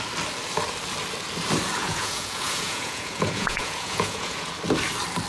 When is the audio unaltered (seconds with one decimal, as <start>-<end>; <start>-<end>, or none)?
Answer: 0.0-1.8; 4.5-5.3